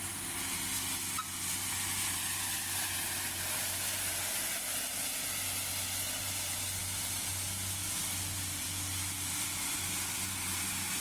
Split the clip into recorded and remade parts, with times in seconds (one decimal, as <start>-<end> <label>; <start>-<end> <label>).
0.0-11.0 recorded